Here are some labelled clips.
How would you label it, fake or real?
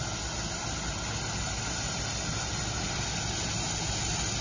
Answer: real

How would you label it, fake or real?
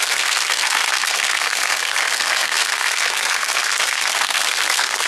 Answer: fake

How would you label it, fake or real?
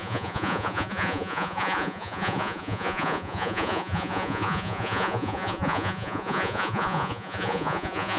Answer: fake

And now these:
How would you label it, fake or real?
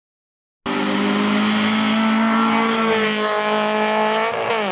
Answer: real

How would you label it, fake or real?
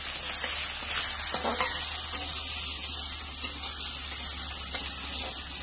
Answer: real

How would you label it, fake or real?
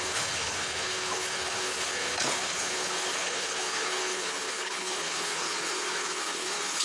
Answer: fake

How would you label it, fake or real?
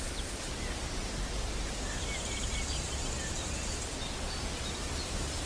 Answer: real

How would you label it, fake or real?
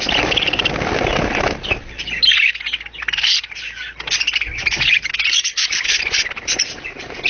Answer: real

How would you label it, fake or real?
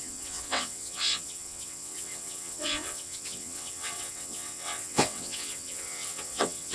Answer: fake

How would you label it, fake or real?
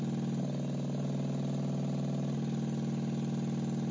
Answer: real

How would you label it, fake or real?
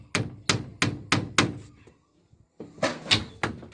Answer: real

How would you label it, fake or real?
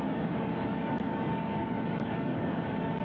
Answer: fake